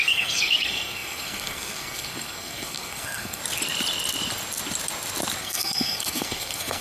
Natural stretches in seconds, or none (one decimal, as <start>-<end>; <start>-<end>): 3.4-5.4